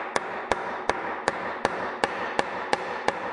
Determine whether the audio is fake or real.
real